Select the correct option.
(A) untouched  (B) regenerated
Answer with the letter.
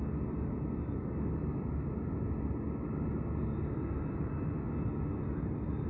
A